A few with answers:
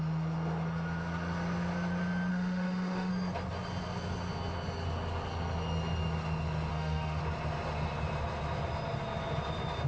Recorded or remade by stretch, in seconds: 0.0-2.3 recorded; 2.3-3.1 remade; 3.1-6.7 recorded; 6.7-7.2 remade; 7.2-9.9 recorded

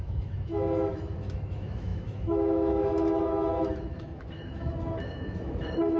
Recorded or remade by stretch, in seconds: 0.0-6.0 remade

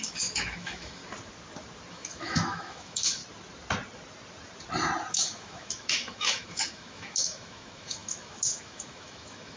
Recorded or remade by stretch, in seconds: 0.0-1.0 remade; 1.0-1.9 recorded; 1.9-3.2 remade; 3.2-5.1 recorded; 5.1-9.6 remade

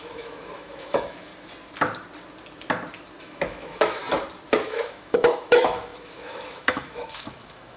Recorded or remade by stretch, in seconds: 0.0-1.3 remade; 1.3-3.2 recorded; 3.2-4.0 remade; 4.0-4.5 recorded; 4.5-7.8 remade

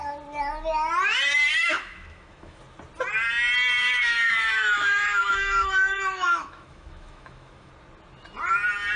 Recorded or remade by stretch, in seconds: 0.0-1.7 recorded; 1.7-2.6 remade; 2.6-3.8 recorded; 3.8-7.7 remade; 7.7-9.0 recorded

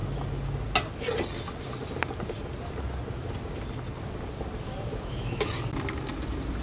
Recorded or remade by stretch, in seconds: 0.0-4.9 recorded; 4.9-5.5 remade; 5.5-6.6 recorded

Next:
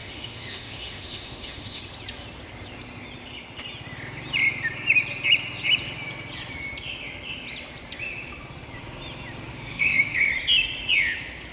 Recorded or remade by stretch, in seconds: 0.0-1.8 remade; 1.8-9.5 recorded; 9.5-10.3 remade; 10.3-11.5 recorded